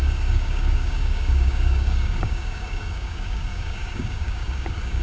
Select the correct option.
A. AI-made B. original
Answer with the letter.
A